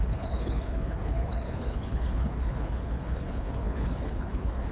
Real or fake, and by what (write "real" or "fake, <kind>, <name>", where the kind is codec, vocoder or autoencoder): fake, codec, HILCodec